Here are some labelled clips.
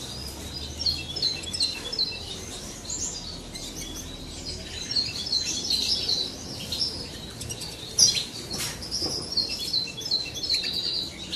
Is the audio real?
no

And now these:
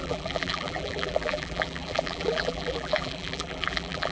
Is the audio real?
no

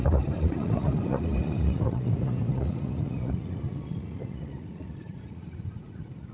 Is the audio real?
no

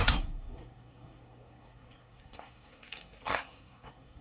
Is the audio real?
no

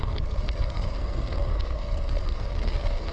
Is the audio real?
no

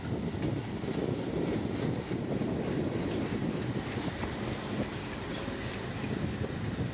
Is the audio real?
yes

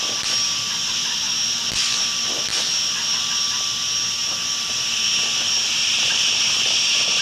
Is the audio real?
yes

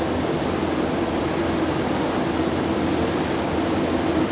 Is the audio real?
yes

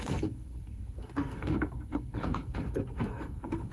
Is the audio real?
no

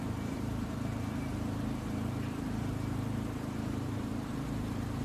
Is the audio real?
no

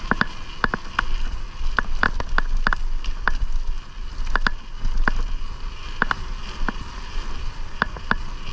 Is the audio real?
yes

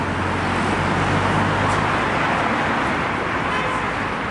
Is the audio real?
yes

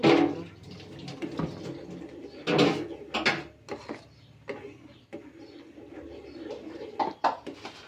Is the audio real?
yes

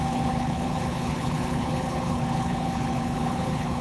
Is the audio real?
no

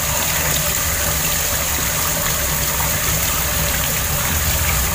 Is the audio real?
yes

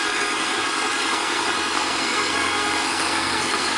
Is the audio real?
no